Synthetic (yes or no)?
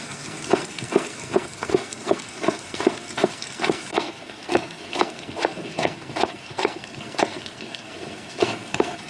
yes